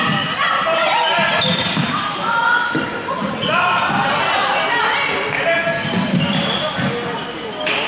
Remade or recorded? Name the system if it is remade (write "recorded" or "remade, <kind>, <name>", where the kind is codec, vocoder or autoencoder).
recorded